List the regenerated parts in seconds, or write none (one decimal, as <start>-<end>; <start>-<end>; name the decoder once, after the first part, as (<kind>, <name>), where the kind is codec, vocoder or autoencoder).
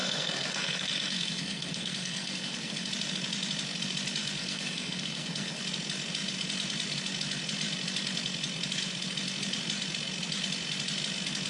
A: 0.0-2.9 (codec, SNAC); 4.4-5.6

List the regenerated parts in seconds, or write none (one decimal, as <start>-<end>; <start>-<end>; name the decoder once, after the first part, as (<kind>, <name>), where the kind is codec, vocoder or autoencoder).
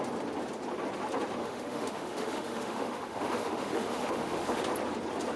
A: 1.4-4.6 (autoencoder, DAC-VAE)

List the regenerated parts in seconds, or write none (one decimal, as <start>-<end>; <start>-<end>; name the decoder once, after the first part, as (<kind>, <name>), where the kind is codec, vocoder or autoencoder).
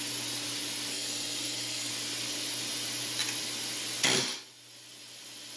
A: 0.9-1.9 (codec, SNAC)